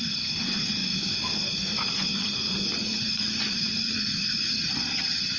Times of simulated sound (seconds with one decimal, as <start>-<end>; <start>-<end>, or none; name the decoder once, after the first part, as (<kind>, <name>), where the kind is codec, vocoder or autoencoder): 2.4-4.7 (vocoder, Vocos)

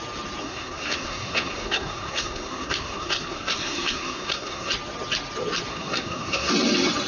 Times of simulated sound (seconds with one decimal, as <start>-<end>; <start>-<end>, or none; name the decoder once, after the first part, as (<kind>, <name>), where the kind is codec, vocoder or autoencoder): 0.4-4.7 (codec, SNAC); 5.7-6.5

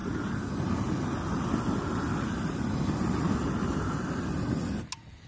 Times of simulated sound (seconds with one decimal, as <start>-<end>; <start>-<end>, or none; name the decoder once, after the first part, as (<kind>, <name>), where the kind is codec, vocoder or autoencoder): none

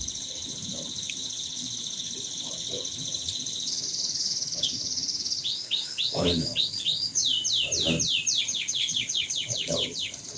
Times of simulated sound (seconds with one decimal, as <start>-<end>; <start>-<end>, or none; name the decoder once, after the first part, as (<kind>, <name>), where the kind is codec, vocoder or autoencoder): 0.0-7.2 (codec, HILCodec); 8.4-10.4